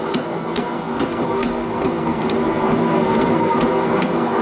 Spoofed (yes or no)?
yes